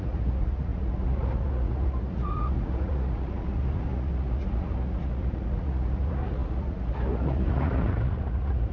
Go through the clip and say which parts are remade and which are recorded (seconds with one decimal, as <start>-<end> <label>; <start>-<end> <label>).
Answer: 0.0-8.7 remade